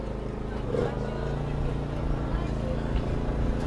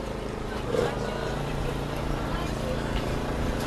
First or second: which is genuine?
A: first